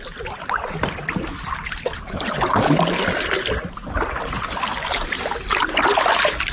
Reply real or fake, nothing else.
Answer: real